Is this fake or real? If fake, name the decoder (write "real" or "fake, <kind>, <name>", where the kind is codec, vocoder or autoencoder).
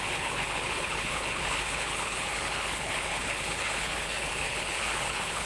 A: fake, codec, HILCodec